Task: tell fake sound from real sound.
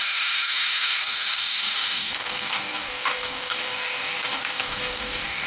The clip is fake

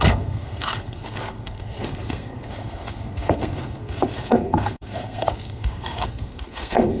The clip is fake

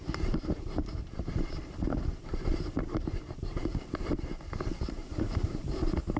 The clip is fake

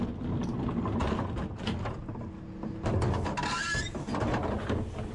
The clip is real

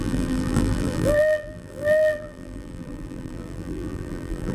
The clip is fake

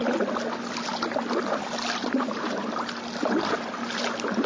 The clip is real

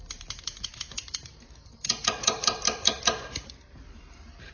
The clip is fake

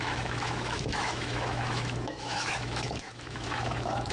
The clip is fake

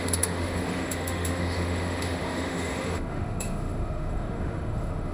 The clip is fake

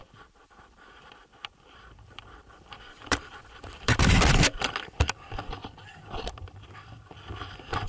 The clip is fake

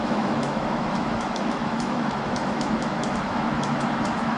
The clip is fake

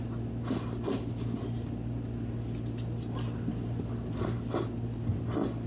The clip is real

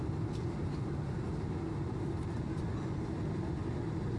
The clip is real